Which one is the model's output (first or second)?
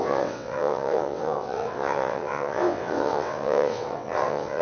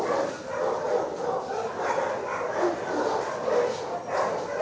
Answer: first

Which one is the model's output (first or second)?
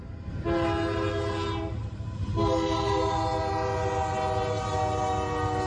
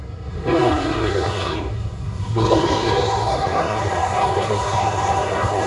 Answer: second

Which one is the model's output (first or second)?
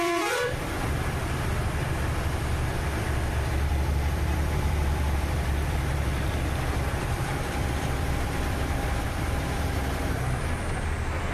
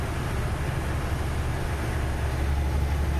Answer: first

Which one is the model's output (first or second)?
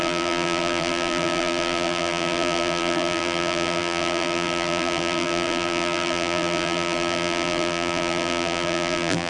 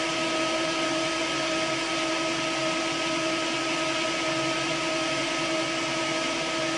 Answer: first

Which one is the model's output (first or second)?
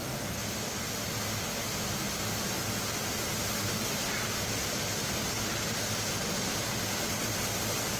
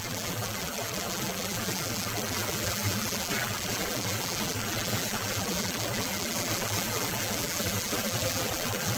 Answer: second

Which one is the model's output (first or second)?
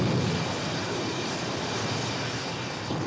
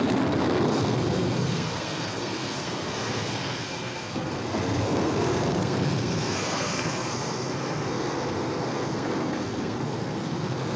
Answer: second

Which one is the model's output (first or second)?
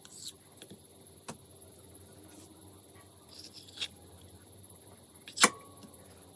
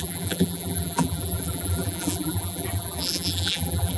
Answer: second